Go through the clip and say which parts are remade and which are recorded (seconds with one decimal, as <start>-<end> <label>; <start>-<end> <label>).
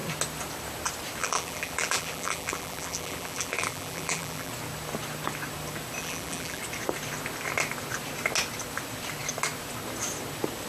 0.0-1.2 recorded; 1.2-4.5 remade; 4.5-6.0 recorded; 6.0-6.6 remade; 6.6-10.7 recorded